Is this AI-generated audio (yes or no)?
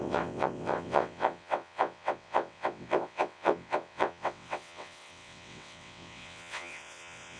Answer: yes